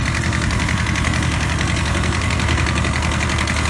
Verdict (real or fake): fake